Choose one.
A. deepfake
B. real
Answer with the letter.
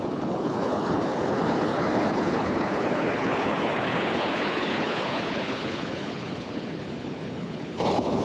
A